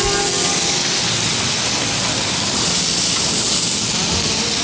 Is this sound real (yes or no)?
yes